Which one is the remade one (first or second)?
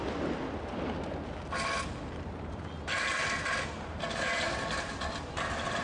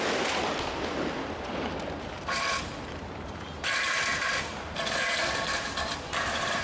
second